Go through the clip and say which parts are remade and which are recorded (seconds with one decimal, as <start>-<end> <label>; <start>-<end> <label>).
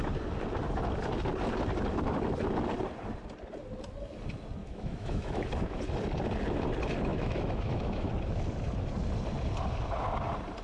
0.0-4.6 recorded; 4.6-5.8 remade; 5.8-7.1 recorded; 7.1-8.1 remade; 8.1-10.6 recorded